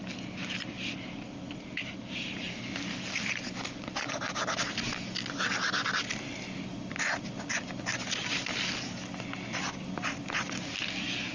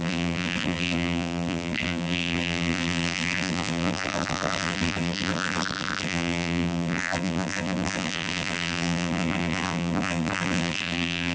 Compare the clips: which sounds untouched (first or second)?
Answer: first